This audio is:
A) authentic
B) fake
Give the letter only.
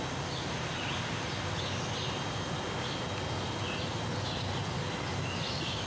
A